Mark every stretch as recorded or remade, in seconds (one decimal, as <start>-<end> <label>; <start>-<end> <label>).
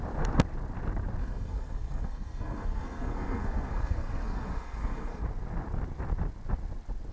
0.0-1.2 recorded; 1.2-5.2 remade; 5.2-7.1 recorded